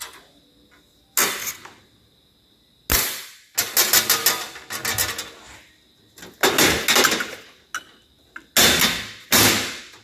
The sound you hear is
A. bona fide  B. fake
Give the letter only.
A